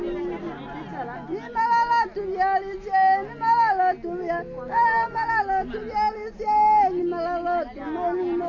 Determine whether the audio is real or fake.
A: real